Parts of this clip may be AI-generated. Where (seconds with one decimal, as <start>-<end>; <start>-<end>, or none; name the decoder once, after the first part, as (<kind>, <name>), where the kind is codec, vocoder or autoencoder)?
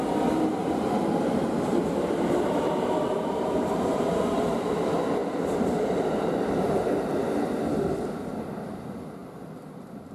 0.6-4.7 (vocoder, BigVGAN v2)